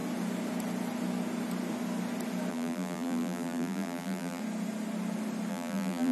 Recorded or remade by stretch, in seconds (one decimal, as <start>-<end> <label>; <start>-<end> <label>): 0.0-2.5 recorded; 2.5-4.4 remade; 4.4-5.5 recorded; 5.5-6.1 remade